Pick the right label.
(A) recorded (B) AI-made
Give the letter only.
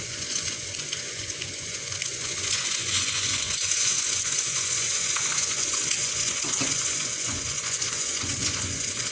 B